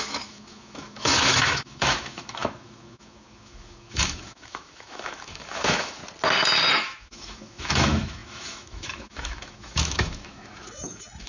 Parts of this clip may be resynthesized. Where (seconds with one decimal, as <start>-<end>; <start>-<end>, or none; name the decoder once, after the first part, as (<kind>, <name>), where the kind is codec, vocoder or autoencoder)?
0.0-6.0 (autoencoder, DAC-VAE); 6.7-11.3